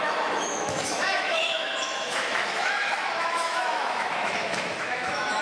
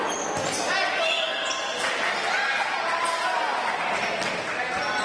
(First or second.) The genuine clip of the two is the second